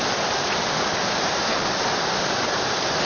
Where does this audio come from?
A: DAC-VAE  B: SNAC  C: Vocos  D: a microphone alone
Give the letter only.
D